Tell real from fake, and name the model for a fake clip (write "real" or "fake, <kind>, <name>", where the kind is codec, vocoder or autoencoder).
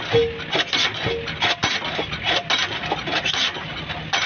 real